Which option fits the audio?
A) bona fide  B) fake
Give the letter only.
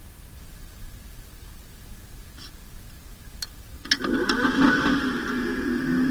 A